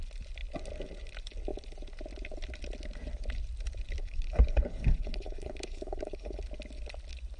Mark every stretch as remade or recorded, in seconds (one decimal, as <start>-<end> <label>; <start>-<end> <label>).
0.0-4.0 recorded; 4.0-6.4 remade; 6.4-7.4 recorded